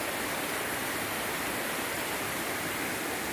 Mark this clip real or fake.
real